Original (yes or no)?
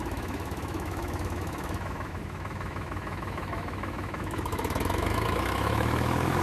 no